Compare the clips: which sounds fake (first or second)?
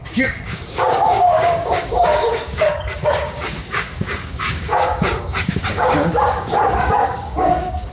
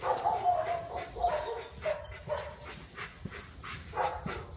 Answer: first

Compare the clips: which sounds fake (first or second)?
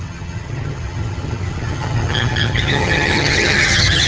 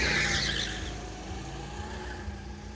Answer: first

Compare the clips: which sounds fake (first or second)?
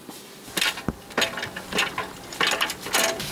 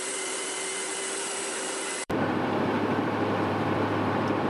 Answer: second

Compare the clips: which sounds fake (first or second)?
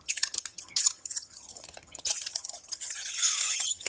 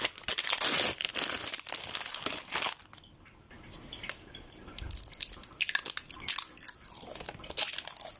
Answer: first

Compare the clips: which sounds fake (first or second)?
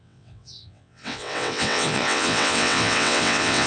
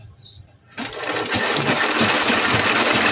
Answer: first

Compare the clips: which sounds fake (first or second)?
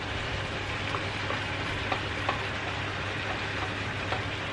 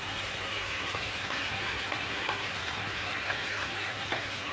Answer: second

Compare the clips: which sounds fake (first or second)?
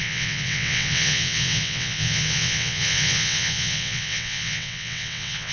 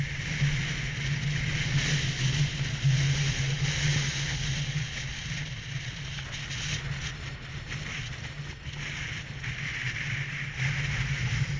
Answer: first